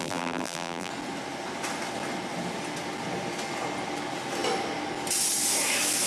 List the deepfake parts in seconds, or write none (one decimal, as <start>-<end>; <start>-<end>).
0.0-0.9

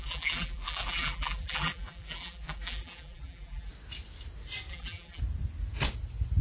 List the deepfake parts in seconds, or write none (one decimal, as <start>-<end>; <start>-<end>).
0.0-3.7; 4.7-5.2